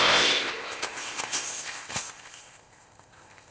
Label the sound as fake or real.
fake